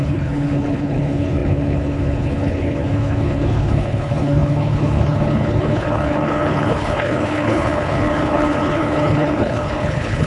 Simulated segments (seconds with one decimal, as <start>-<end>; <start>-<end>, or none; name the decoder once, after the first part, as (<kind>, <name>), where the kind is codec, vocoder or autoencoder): 0.0-10.3 (codec, HILCodec)